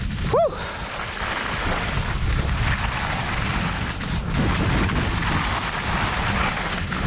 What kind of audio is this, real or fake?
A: real